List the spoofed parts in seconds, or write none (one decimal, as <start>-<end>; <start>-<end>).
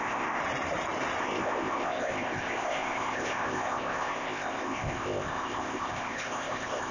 0.0-0.4; 1.2-6.9